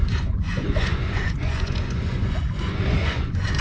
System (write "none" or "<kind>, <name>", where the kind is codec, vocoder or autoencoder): vocoder, Vocos